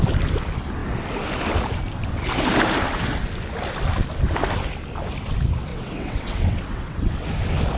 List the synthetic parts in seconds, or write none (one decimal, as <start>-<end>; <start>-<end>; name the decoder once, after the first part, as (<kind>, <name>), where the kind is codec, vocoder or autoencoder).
5.7-7.1 (vocoder, WaveNeXt)